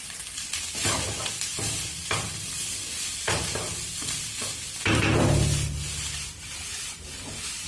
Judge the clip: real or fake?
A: real